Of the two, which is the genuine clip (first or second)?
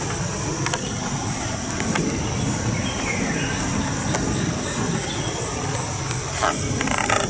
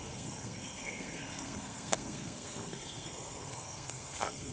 first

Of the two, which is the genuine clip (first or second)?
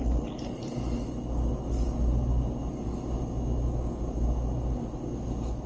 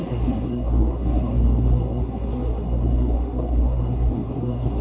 first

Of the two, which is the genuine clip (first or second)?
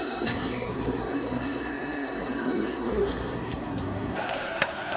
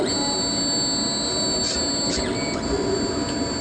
second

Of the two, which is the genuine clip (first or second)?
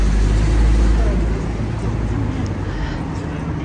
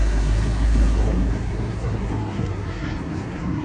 first